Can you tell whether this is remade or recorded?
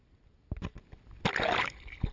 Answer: recorded